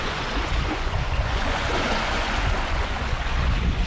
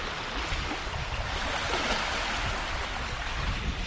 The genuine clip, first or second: second